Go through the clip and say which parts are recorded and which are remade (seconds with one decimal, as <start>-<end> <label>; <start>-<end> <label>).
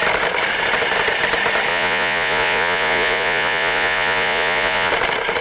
0.0-1.7 recorded; 1.7-4.9 remade; 4.9-5.4 recorded